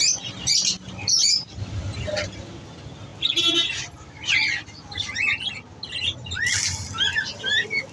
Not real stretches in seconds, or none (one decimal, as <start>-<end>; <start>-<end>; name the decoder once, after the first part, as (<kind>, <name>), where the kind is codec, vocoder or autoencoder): 1.2-2.0 (vocoder, BigVGAN v2)